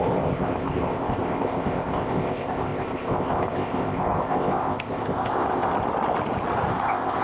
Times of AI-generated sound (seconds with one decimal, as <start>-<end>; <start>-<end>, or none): 0.0-5.7; 6.7-7.2